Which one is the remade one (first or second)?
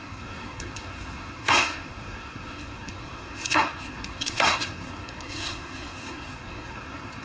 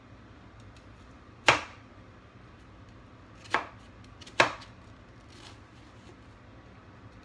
first